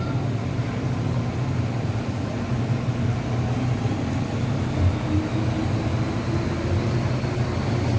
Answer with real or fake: real